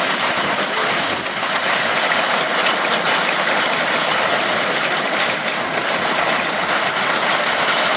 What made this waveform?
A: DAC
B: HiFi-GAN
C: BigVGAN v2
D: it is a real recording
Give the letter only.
D